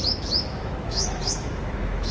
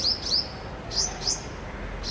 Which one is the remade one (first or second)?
first